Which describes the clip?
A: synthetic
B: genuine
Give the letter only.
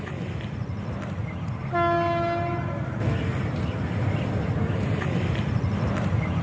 B